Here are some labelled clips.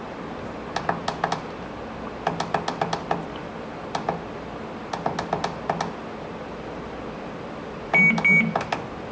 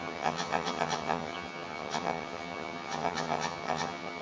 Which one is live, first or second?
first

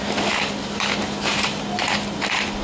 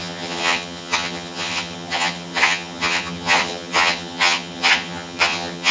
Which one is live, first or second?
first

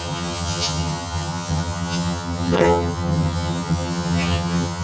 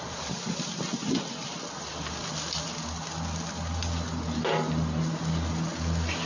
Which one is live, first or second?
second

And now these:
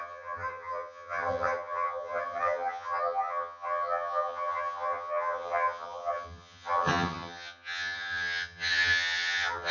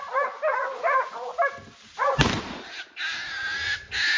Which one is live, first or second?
second